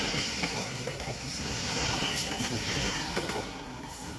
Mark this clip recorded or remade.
remade